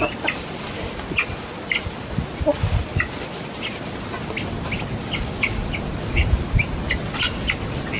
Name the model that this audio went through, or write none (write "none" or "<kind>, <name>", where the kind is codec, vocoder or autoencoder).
none